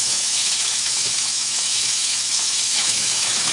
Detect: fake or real fake